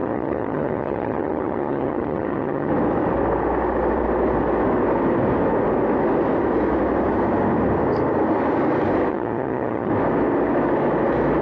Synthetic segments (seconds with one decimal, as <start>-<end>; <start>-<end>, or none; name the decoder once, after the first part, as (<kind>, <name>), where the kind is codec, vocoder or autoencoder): 0.0-2.7 (vocoder, HiFi-GAN); 9.1-9.9